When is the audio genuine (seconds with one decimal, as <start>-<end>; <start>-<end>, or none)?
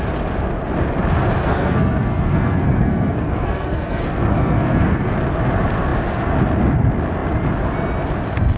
0.0-1.4; 5.1-8.6